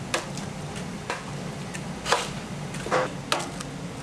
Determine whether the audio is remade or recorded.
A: recorded